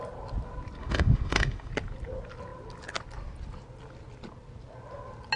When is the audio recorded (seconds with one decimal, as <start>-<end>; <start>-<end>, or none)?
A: 0.0-0.8; 1.7-5.4